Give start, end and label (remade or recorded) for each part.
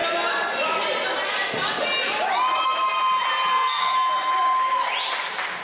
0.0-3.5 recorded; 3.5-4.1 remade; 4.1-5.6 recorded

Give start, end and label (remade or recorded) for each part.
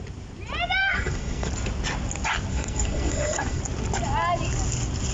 0.0-0.8 recorded; 0.8-1.5 remade; 1.5-2.5 recorded; 2.5-3.6 remade; 3.6-5.1 recorded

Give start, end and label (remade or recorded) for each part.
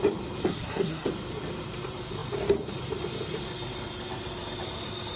0.0-0.4 recorded; 0.4-1.1 remade; 1.1-5.2 recorded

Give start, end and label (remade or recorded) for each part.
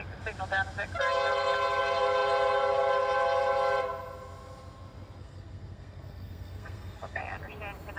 0.0-5.2 recorded; 5.2-7.2 remade; 7.2-8.0 recorded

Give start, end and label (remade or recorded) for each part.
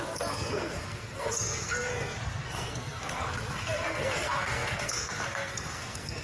0.0-6.2 remade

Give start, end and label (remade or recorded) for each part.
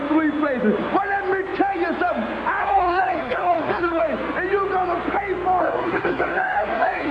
0.0-2.6 recorded; 2.6-4.0 remade; 4.0-5.6 recorded; 5.6-7.1 remade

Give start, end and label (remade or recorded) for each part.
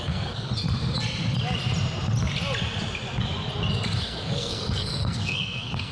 0.0-0.5 remade; 0.5-4.0 recorded; 4.0-5.9 remade